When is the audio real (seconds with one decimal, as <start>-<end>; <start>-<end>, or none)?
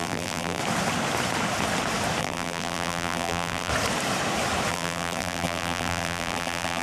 0.6-2.2; 3.7-4.7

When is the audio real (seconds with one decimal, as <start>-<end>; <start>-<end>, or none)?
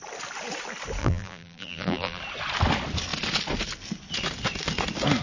0.0-1.0; 2.2-5.2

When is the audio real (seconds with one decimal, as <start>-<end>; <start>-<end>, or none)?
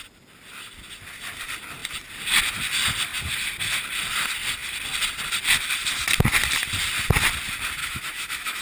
0.0-7.8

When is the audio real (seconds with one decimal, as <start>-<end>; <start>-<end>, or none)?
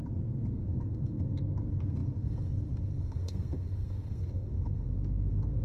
none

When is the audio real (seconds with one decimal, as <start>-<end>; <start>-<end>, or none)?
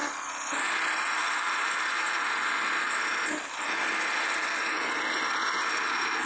0.0-6.3